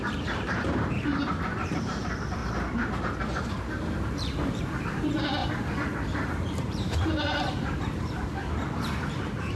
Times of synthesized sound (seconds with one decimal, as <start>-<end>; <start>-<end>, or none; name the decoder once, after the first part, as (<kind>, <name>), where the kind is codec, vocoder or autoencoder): 0.0-1.1 (vocoder, BigVGAN v2); 1.8-2.4; 3.4-9.6